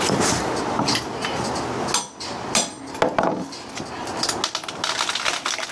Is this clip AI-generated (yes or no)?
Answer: no